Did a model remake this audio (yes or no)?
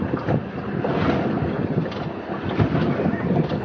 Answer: no